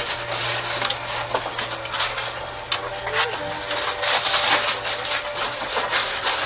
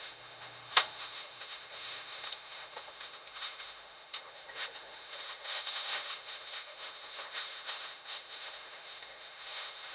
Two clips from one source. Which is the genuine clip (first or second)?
first